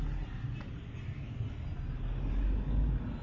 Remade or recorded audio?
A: recorded